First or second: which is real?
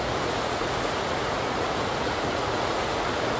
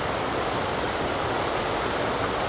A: second